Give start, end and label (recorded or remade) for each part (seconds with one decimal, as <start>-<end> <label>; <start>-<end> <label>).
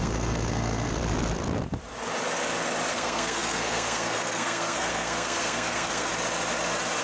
0.0-1.0 remade; 1.0-2.9 recorded; 2.9-6.1 remade; 6.1-7.0 recorded